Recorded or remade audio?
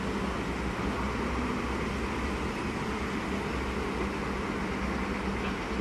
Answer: recorded